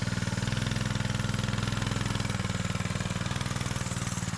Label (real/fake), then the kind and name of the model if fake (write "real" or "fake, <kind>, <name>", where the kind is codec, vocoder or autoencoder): real